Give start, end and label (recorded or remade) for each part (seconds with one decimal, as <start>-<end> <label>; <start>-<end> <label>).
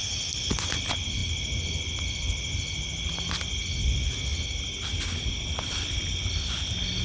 0.0-7.0 recorded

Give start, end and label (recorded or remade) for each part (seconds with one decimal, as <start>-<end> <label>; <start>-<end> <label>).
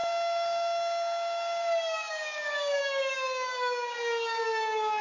0.0-5.0 remade